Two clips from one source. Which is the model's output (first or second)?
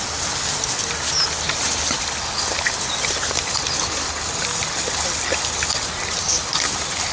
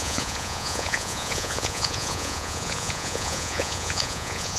second